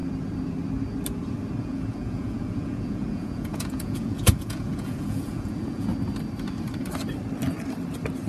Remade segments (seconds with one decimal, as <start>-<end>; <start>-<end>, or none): 1.6-5.9

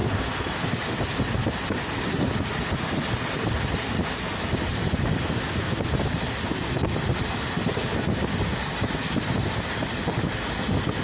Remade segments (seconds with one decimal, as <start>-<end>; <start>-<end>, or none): none

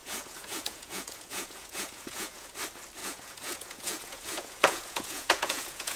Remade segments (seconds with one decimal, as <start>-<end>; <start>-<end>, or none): 0.0-2.5; 3.0-6.0

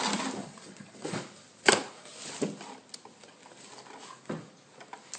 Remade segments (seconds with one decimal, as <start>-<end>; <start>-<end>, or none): 0.4-1.2

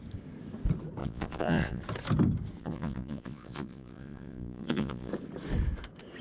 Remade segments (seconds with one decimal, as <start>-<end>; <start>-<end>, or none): 1.0-1.8; 2.6-5.1

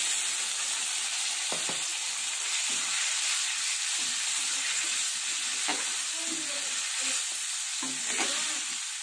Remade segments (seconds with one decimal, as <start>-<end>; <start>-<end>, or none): none